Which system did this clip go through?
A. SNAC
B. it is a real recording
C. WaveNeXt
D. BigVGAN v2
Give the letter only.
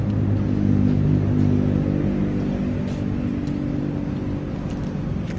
B